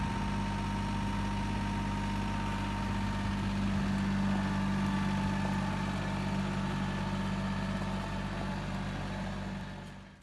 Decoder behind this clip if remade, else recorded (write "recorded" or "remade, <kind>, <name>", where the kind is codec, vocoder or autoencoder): recorded